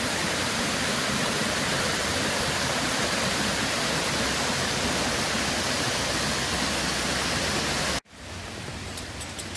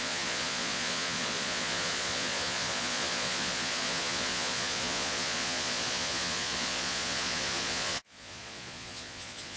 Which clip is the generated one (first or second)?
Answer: second